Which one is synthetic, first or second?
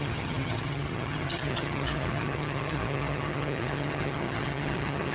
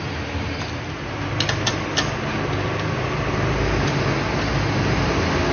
first